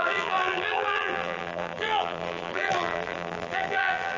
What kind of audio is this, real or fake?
fake